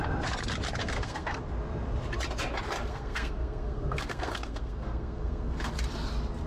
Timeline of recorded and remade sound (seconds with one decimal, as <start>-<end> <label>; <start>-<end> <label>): 0.0-0.8 recorded; 0.8-1.4 remade; 1.4-2.9 recorded; 2.9-5.7 remade; 5.7-6.5 recorded